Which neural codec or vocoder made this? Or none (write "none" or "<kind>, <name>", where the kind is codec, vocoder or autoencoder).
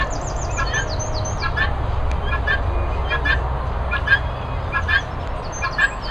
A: none